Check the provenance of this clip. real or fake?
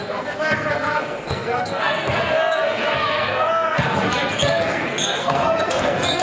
fake